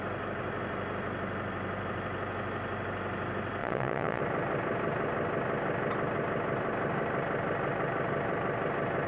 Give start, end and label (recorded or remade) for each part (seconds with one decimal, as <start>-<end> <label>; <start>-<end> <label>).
0.0-3.6 recorded; 3.6-4.2 remade; 4.2-9.1 recorded